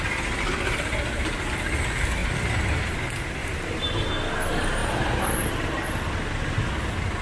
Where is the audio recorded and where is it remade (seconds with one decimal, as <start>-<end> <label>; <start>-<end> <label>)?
0.0-3.4 recorded; 3.4-4.1 remade; 4.1-4.8 recorded; 4.8-5.5 remade; 5.5-7.2 recorded